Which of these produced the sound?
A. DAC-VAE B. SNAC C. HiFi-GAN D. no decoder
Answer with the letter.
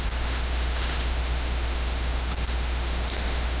A